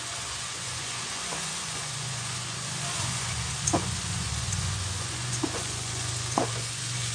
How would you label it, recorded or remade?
remade